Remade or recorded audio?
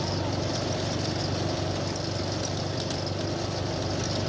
recorded